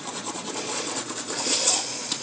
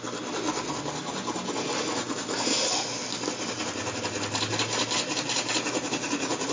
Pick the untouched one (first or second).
second